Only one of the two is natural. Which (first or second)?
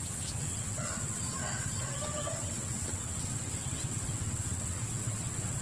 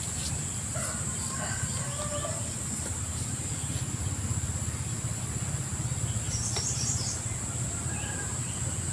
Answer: second